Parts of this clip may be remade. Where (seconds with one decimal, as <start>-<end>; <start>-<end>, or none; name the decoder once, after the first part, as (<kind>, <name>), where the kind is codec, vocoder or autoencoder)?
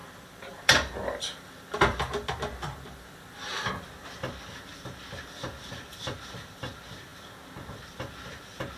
0.0-3.7 (vocoder, BigVGAN v2)